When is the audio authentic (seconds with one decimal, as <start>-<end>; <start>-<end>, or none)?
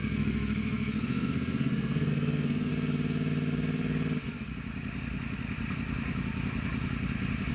2.7-7.5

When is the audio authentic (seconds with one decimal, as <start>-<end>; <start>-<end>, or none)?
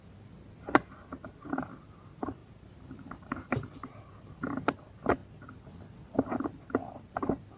0.0-2.4; 3.5-7.6